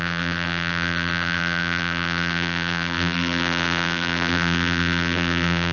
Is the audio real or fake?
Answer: fake